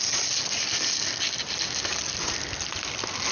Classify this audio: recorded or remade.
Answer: recorded